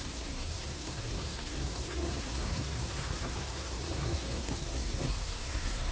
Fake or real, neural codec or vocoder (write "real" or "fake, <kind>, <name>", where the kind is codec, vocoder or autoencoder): fake, codec, SNAC